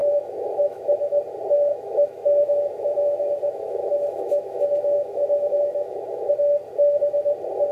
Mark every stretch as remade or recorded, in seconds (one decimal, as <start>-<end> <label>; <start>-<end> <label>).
0.0-1.2 remade; 1.2-1.7 recorded; 1.7-6.3 remade; 6.3-7.7 recorded